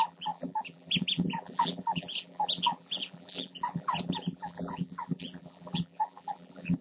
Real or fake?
fake